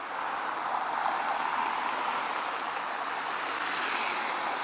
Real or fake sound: real